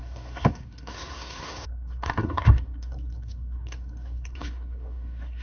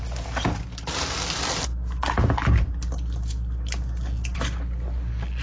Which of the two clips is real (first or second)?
second